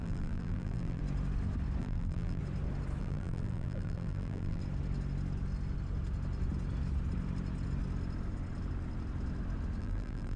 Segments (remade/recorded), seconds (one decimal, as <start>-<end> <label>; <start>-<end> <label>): 0.0-1.0 remade; 1.0-1.8 recorded; 1.8-2.4 remade; 2.4-3.0 recorded; 3.0-4.6 remade; 4.6-9.8 recorded; 9.8-10.4 remade